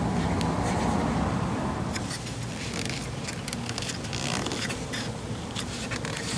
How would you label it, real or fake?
real